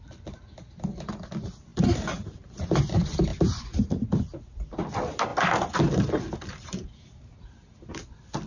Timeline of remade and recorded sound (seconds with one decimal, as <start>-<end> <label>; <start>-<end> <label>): 0.0-1.7 recorded; 1.7-2.5 remade; 2.5-5.3 recorded; 5.3-7.9 remade; 7.9-8.5 recorded